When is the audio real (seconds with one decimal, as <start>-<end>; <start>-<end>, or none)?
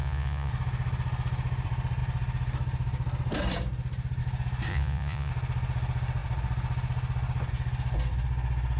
0.5-4.7; 5.3-8.8